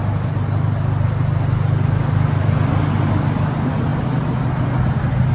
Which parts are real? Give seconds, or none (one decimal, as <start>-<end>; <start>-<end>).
0.0-5.3